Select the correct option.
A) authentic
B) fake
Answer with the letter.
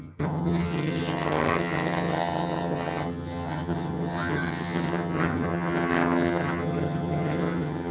B